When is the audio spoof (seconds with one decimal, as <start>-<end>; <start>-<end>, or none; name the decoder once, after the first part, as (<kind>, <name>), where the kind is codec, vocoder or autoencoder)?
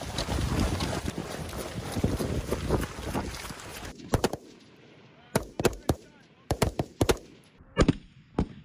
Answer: 1.2-2.0 (vocoder, BigVGAN v2); 3.7-8.1